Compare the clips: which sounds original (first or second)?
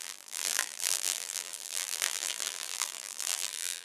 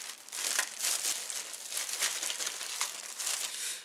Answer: second